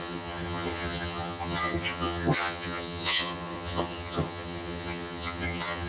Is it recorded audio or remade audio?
remade